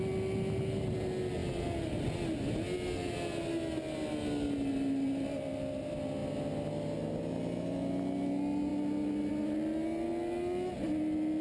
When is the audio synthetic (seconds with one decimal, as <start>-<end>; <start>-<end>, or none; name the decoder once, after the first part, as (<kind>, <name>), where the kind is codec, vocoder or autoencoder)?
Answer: none